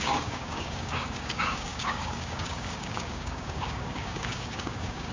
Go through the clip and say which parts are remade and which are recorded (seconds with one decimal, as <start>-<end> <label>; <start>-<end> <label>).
0.0-5.1 remade